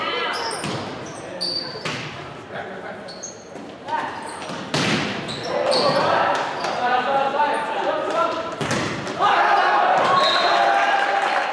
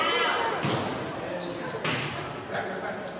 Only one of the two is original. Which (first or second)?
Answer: second